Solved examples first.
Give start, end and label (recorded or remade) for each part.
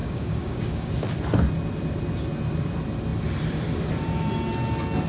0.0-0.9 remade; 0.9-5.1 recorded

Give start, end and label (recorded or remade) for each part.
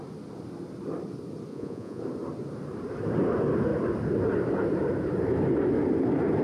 0.0-1.5 recorded; 1.5-2.0 remade; 2.0-6.4 recorded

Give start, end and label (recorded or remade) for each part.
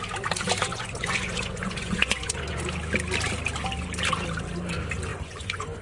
0.0-0.7 recorded; 0.7-2.6 remade; 2.6-5.1 recorded; 5.1-5.8 remade